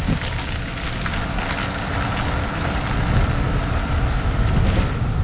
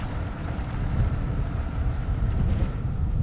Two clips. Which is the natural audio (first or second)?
first